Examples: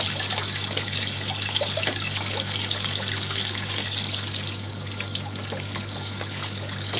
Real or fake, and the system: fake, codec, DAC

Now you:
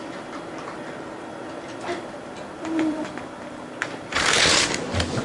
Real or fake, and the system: fake, vocoder, BigVGAN v2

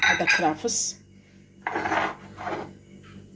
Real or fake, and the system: real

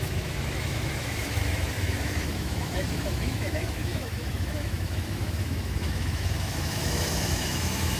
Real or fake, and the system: fake, autoencoder, DAC-VAE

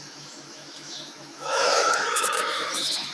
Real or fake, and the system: fake, autoencoder, DAC-VAE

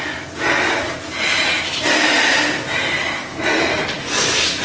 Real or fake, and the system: real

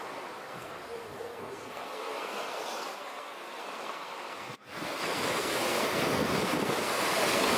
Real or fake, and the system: fake, codec, SNAC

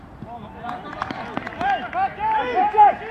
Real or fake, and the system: real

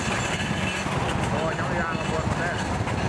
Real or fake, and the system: real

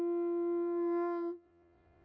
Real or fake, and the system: fake, vocoder, Vocos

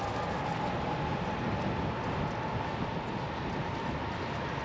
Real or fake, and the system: real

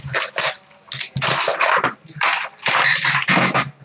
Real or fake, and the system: real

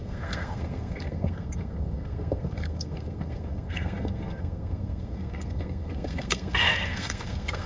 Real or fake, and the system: fake, codec, SNAC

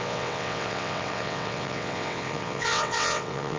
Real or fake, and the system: fake, vocoder, WaveNeXt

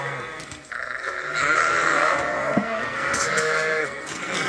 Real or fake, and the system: fake, codec, SNAC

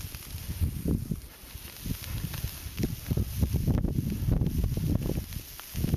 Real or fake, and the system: real